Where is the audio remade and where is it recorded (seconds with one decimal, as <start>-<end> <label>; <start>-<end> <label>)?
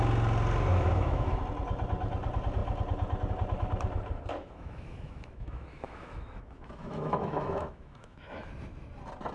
0.0-0.7 recorded; 0.7-1.3 remade; 1.3-4.4 recorded; 4.4-8.5 remade; 8.5-9.3 recorded